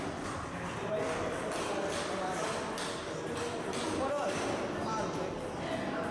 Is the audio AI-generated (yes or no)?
no